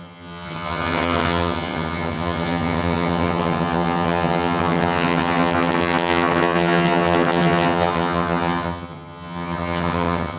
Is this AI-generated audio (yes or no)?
yes